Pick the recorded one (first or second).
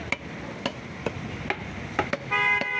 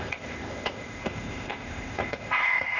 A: first